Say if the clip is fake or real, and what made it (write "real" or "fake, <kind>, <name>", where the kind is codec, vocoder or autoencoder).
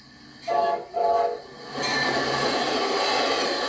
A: real